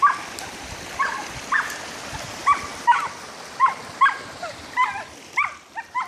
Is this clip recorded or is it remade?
recorded